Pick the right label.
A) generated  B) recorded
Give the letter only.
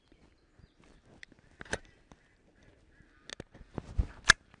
B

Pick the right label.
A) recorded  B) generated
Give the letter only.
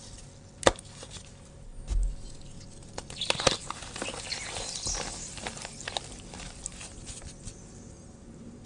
A